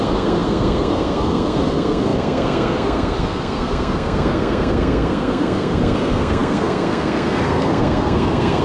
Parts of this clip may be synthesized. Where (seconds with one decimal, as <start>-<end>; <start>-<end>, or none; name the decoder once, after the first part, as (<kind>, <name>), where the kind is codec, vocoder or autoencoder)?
0.0-8.6 (codec, SNAC)